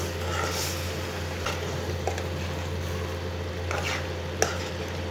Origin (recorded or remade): recorded